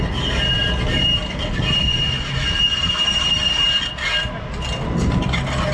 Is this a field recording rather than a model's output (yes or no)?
yes